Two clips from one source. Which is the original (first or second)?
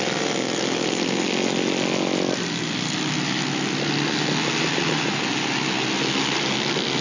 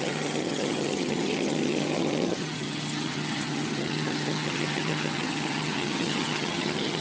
first